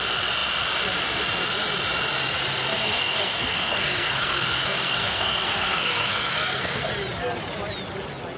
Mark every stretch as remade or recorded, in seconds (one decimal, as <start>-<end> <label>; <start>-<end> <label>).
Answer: 0.0-2.7 recorded; 2.7-6.9 remade; 6.9-8.4 recorded